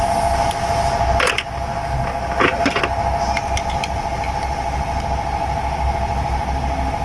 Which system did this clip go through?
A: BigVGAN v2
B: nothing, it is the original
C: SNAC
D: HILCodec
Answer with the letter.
B